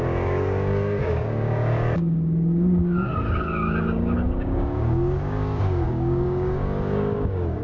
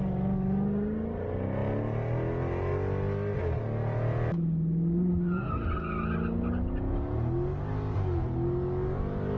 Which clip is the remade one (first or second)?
first